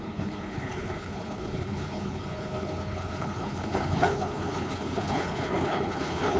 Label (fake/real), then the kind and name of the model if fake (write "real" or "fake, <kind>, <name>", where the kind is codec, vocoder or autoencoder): fake, codec, HILCodec